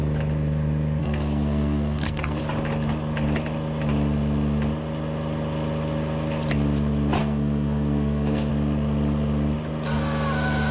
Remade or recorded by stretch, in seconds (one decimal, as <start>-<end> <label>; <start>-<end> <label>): 0.0-1.0 recorded; 1.0-2.4 remade; 2.4-7.2 recorded; 7.2-8.5 remade; 8.5-10.7 recorded